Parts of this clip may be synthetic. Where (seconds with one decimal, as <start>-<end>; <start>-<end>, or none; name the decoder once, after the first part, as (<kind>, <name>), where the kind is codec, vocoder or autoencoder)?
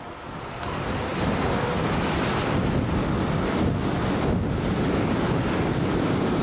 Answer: none